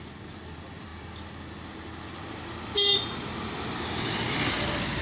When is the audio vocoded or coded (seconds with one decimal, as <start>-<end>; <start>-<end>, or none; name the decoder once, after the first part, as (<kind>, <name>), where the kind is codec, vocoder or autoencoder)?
none